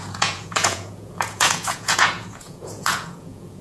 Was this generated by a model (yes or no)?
yes